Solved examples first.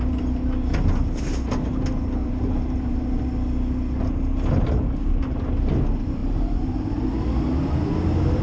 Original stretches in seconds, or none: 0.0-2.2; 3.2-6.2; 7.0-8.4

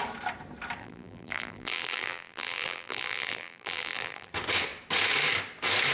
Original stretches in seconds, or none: 0.0-0.8; 4.3-5.9